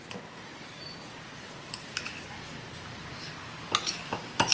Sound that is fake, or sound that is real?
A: real